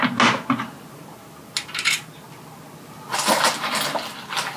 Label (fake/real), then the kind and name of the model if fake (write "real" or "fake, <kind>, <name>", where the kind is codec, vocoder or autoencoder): real